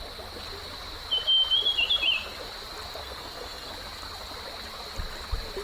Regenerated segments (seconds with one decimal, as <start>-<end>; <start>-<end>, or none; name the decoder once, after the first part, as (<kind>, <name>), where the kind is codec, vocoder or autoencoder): 3.0-3.7 (codec, SNAC)